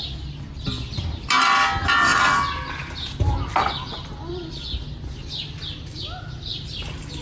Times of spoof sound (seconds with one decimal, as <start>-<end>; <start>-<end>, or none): none